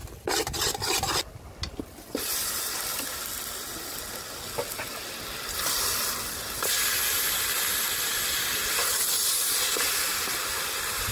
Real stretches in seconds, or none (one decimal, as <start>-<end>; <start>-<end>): 0.0-11.1